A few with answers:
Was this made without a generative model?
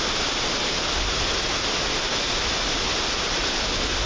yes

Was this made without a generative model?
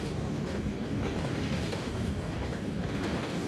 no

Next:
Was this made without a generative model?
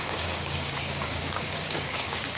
no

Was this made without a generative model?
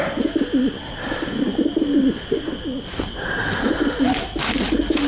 yes